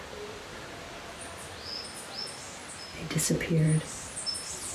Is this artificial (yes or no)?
no